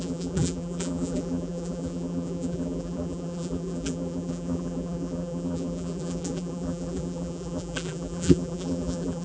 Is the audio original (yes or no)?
no